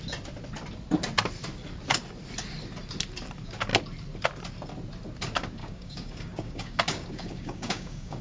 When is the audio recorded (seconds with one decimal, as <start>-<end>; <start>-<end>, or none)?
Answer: 0.0-5.6